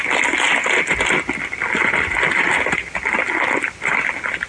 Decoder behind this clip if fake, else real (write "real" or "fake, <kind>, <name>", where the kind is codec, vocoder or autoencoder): real